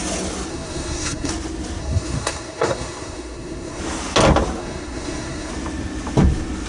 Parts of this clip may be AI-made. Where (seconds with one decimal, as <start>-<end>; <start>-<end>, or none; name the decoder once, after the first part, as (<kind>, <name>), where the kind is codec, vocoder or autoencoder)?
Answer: 0.5-1.3 (codec, SNAC); 1.8-3.8; 4.6-5.5